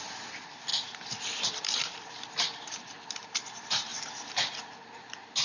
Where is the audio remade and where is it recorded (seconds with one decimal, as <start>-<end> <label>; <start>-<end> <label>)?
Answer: 0.0-0.7 remade; 0.7-1.5 recorded; 1.5-5.4 remade